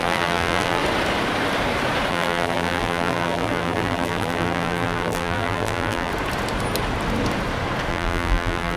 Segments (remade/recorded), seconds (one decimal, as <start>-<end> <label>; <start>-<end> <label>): 0.0-0.8 remade; 0.8-2.1 recorded; 2.1-6.1 remade; 6.1-7.9 recorded; 7.9-8.8 remade